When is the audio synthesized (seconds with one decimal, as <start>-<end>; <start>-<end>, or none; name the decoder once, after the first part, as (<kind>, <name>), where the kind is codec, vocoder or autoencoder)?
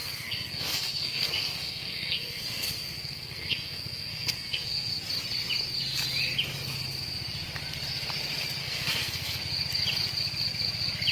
0.0-4.9 (codec, SNAC); 8.6-9.4